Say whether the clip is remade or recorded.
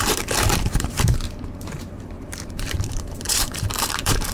remade